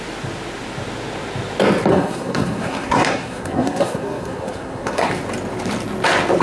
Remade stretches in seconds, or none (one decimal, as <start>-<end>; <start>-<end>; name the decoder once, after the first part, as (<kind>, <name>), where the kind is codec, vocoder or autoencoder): 1.9-5.1 (codec, SNAC)

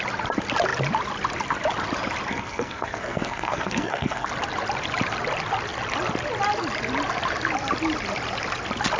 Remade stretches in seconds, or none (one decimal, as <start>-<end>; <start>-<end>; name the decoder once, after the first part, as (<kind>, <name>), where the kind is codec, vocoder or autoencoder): 2.3-4.3 (codec, SNAC)

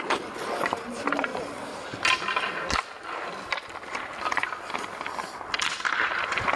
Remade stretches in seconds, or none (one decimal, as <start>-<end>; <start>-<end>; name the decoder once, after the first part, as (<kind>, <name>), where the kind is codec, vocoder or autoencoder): none

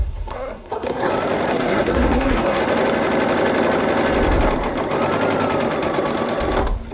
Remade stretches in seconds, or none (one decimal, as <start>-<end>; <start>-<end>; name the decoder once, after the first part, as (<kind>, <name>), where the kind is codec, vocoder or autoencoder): 0.0-1.1 (codec, SNAC); 1.5-2.6